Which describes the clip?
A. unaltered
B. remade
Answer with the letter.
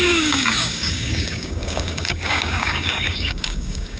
B